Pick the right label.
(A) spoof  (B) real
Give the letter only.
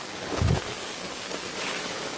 A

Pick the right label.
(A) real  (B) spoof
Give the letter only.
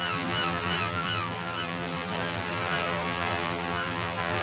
B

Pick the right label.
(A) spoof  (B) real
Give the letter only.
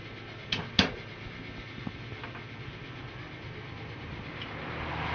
B